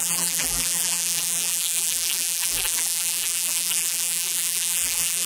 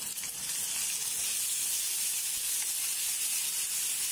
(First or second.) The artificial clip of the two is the first